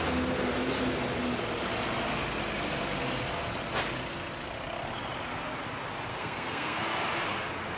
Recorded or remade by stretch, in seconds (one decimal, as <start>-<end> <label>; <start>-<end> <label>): 0.0-6.1 recorded; 6.1-6.8 remade; 6.8-7.8 recorded